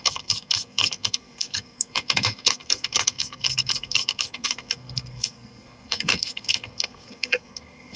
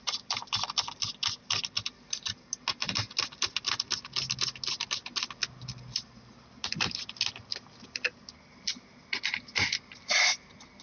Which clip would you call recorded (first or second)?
second